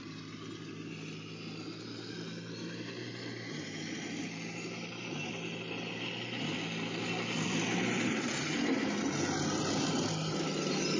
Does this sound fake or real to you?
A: real